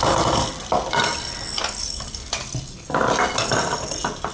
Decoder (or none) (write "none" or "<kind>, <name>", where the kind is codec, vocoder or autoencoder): none